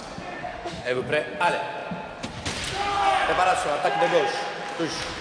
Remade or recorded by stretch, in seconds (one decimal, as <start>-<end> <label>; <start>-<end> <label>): 0.0-0.4 recorded; 0.4-1.0 remade; 1.0-5.2 recorded